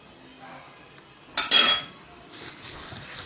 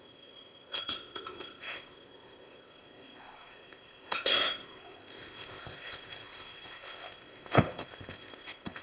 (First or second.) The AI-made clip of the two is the second